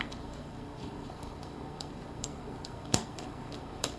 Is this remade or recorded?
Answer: remade